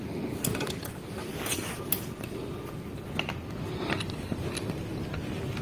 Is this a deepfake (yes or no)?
no